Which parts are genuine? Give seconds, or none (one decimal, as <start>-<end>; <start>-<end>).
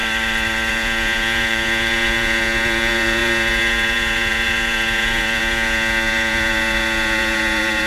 0.0-0.7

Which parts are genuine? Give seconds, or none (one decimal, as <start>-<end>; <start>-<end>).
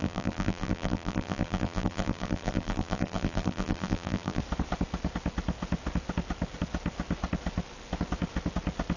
4.4-9.0